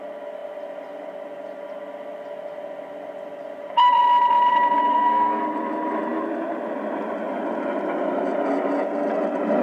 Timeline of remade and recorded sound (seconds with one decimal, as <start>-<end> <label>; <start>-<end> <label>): 0.0-4.9 recorded; 4.9-5.4 remade; 5.4-9.6 recorded